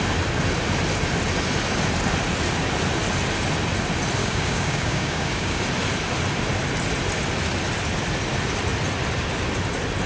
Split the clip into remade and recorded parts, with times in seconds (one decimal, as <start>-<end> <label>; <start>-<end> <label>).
0.0-4.2 recorded; 4.2-5.6 remade; 5.6-10.1 recorded

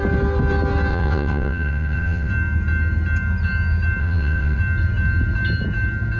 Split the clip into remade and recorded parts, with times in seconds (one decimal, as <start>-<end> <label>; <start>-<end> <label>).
0.0-0.9 recorded; 0.9-2.3 remade; 2.3-4.0 recorded; 4.0-4.6 remade; 4.6-6.2 recorded